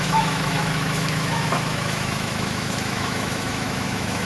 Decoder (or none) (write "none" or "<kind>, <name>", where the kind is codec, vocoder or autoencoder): autoencoder, DAC-VAE